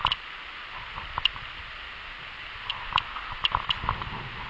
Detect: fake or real real